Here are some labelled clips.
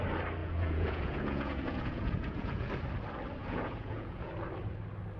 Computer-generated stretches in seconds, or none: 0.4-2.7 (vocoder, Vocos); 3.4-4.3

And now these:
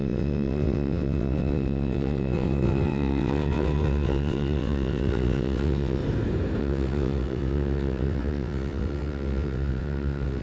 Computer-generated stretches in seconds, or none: 0.0-6.0 (vocoder, WaveNeXt); 6.6-10.4

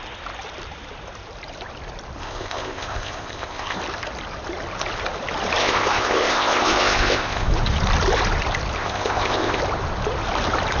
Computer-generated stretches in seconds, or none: 2.2-3.8 (codec, ZipCodec); 5.6-7.5; 8.8-9.6

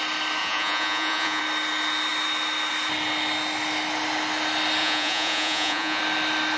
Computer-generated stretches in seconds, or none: 0.4-1.4 (vocoder, Vocos); 4.8-6.0